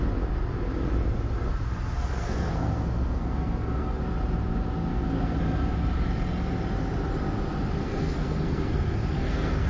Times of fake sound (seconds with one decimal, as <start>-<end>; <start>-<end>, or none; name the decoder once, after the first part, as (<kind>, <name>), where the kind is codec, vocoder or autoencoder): 2.0-4.0 (codec, SNAC); 4.9-5.4; 7.8-9.7